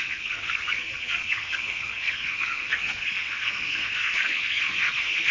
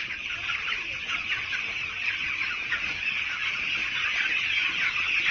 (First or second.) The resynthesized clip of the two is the first